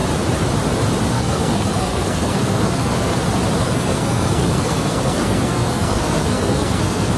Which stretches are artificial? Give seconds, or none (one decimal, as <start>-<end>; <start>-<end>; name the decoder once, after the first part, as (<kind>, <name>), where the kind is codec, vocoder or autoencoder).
1.1-3.1 (codec, SNAC); 3.6-7.2